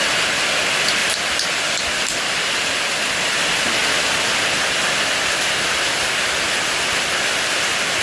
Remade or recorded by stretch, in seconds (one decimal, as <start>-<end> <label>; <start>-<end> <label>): 0.0-1.0 recorded; 1.0-2.4 remade; 2.4-8.0 recorded